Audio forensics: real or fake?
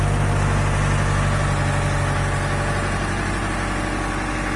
real